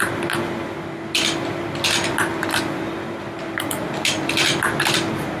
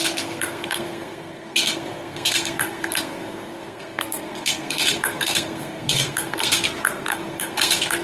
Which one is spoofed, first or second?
second